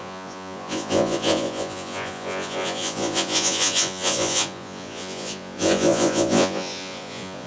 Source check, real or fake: fake